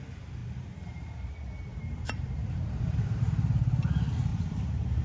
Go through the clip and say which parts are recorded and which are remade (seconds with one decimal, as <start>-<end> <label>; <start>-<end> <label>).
0.0-0.4 recorded; 0.4-1.1 remade; 1.1-1.7 recorded; 1.7-3.3 remade; 3.3-4.3 recorded; 4.3-5.0 remade